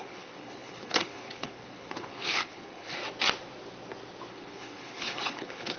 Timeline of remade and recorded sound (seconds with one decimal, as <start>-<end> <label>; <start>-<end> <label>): 0.0-3.0 remade; 3.0-4.3 recorded; 4.3-5.8 remade

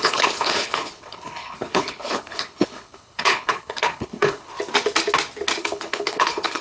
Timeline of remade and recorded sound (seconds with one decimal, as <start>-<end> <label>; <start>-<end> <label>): 0.0-4.5 remade; 4.5-5.6 recorded; 5.6-6.6 remade